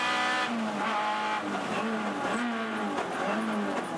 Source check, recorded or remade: recorded